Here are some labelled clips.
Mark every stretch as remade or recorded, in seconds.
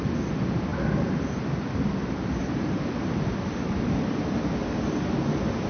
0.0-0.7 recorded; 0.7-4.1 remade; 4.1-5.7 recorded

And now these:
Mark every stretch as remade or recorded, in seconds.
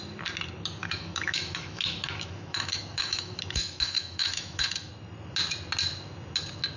0.0-0.8 recorded; 0.8-4.9 remade; 4.9-6.8 recorded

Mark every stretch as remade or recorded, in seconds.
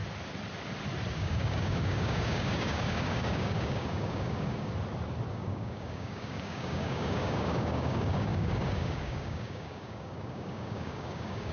0.0-1.1 recorded; 1.1-4.7 remade; 4.7-5.3 recorded; 5.3-11.5 remade